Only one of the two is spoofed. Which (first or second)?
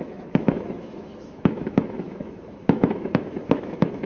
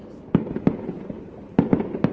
first